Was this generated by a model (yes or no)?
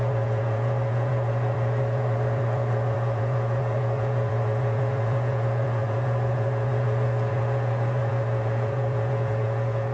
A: yes